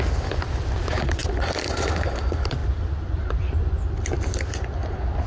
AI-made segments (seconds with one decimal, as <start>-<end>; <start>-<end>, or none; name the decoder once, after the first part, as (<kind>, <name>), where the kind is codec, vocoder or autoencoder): none

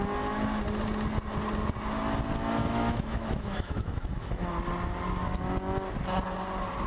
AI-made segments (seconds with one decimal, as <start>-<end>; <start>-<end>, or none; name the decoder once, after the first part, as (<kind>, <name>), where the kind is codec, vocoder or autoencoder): 2.6-4.5 (autoencoder, DAC-VAE)

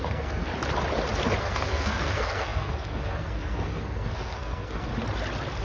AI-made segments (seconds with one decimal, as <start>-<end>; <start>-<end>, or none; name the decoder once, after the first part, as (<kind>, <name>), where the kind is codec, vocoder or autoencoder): 0.0-0.5 (codec, SNAC); 1.4-4.9

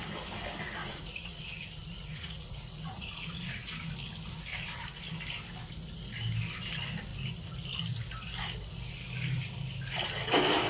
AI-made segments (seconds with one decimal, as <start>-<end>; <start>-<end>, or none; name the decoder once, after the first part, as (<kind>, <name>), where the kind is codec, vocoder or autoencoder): 0.8-1.4 (vocoder, Vocos); 1.8-3.5

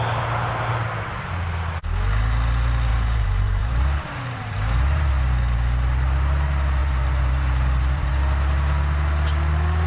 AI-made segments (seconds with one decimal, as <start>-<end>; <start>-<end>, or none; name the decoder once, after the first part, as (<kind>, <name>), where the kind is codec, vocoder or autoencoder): 2.9-5.1 (vocoder, BigVGAN v2); 6.8-8.1

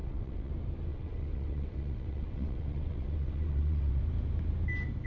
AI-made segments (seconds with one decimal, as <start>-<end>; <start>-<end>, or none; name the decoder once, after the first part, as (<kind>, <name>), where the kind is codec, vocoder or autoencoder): 0.0-0.5 (vocoder, WaveNeXt); 0.9-4.0

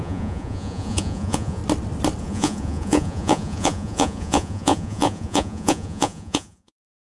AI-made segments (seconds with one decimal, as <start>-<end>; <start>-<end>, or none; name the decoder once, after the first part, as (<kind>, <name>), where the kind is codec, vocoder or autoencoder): 0.0-1.6 (vocoder, Vocos); 2.2-7.2

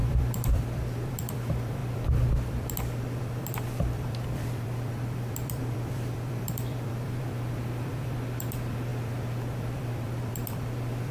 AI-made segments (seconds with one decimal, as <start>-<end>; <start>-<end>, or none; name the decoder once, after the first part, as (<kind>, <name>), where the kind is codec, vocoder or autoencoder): 0.0-11.1 (vocoder, BigVGAN v2)